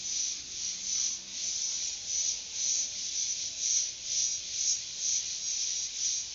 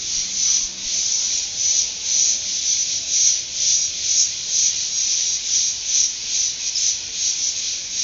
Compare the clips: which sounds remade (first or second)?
second